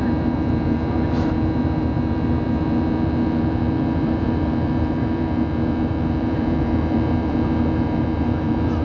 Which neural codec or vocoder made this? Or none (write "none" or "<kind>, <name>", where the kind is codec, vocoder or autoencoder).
vocoder, BigVGAN v2